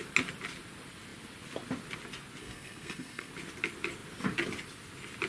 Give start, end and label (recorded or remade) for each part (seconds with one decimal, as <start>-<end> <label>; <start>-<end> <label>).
0.0-2.4 recorded; 2.4-3.3 remade; 3.3-5.3 recorded